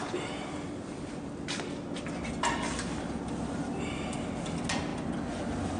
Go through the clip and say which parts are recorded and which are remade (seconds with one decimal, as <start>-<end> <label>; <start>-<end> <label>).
0.0-5.8 recorded